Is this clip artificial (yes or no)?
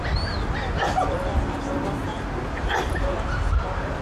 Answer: no